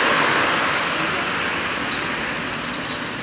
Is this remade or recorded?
recorded